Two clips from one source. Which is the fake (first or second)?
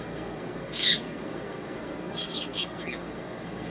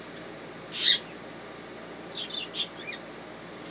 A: first